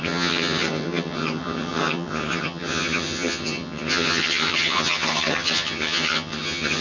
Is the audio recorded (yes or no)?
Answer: no